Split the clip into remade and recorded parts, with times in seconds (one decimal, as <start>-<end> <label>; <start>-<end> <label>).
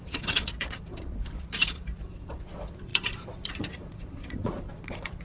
0.0-5.2 remade